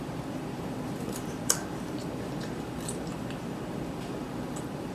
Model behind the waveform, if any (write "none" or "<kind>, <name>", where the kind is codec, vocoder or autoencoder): vocoder, BigVGAN v2